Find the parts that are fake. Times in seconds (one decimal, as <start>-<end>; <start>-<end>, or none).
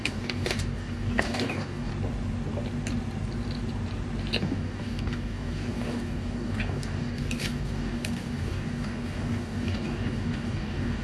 0.0-1.9; 4.4-11.0